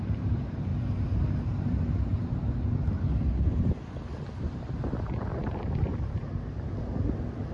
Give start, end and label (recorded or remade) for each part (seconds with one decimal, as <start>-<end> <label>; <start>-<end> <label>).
0.0-0.7 remade; 0.7-4.2 recorded; 4.2-6.7 remade; 6.7-7.5 recorded